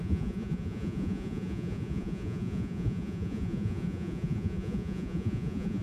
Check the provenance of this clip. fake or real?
fake